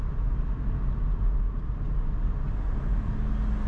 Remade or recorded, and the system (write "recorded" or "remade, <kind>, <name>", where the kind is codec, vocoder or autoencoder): recorded